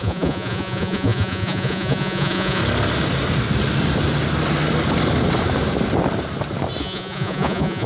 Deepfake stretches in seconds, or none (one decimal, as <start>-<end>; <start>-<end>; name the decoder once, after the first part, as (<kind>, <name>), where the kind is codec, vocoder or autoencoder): 0.0-2.6 (vocoder, Vocos); 6.8-7.9